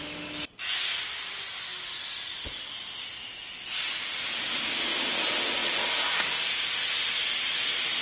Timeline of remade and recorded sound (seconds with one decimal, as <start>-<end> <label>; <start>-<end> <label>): 0.0-8.0 recorded